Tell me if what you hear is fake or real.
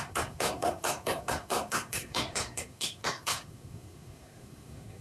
fake